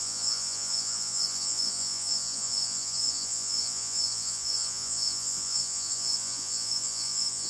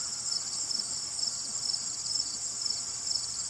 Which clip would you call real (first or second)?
second